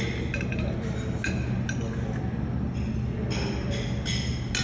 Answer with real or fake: real